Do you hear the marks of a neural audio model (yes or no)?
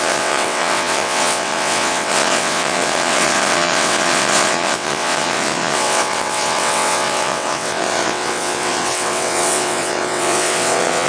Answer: yes